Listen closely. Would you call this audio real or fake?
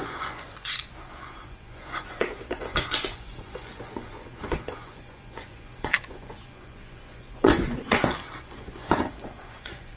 fake